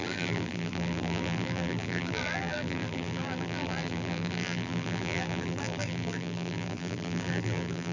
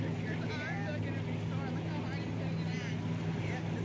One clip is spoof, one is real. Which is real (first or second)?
second